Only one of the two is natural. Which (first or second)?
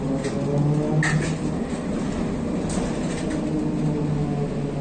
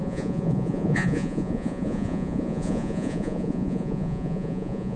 first